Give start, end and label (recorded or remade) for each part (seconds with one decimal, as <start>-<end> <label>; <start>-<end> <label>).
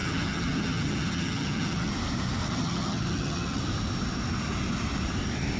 0.0-1.9 remade; 1.9-2.4 recorded; 2.4-3.6 remade; 3.6-5.6 recorded